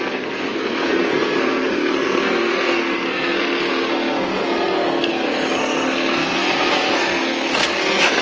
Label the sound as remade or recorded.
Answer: remade